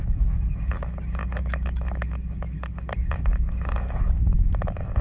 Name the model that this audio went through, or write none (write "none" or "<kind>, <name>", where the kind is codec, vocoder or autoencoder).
autoencoder, DAC-VAE